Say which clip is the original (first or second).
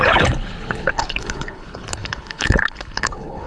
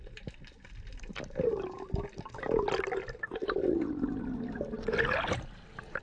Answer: second